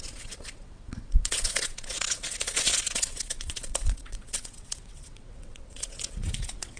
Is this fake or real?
fake